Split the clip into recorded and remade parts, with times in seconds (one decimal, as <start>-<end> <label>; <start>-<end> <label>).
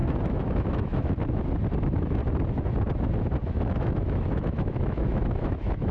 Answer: 0.0-1.2 remade; 1.2-1.8 recorded; 1.8-2.2 remade; 2.2-3.5 recorded; 3.5-5.9 remade